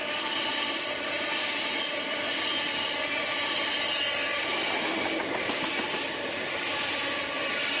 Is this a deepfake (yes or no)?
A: no